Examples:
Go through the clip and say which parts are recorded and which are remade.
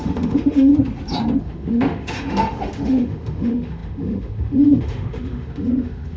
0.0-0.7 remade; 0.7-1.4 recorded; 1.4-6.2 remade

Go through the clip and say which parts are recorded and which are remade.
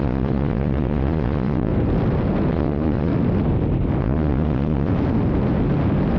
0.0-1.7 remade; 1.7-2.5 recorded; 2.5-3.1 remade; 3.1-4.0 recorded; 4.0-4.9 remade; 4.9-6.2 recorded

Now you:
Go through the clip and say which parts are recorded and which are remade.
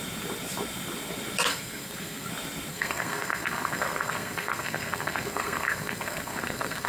0.0-1.5 recorded; 1.5-2.3 remade; 2.3-2.7 recorded; 2.7-6.9 remade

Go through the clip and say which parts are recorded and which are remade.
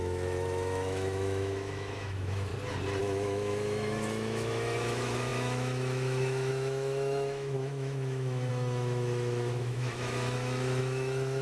0.0-2.5 remade; 2.5-3.0 recorded; 3.0-11.4 remade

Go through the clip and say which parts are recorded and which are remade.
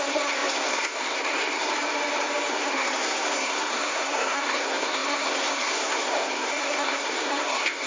0.0-1.7 remade; 1.7-2.5 recorded; 2.5-7.9 remade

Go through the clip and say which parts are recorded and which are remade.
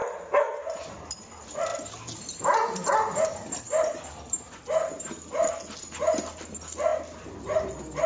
0.0-8.1 recorded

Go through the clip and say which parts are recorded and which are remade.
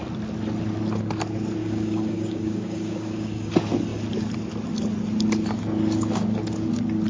0.0-1.6 recorded; 1.6-3.5 remade; 3.5-7.1 recorded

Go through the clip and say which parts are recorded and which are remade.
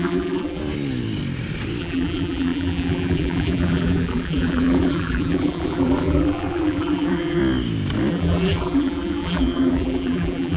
0.0-0.6 remade; 0.6-1.8 recorded; 1.8-7.4 remade; 7.4-8.1 recorded; 8.1-10.6 remade